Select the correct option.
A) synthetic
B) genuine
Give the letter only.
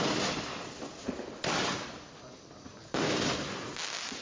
B